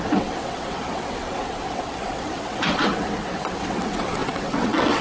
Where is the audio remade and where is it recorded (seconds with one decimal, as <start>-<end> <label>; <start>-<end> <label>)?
0.0-5.0 remade